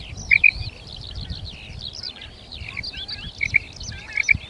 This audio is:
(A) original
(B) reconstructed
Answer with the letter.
A